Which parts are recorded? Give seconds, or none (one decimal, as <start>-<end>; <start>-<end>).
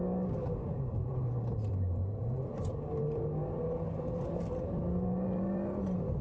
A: 0.0-6.2